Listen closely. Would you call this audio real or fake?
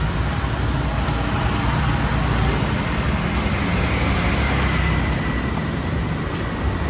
real